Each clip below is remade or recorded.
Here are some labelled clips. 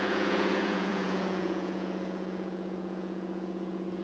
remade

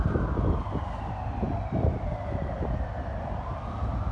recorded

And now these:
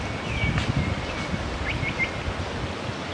recorded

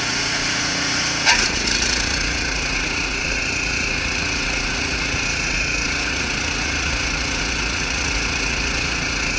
remade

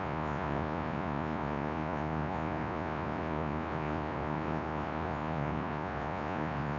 remade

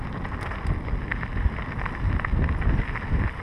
recorded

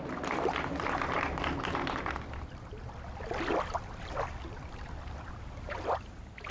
recorded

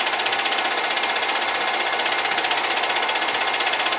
recorded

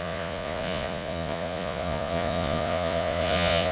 remade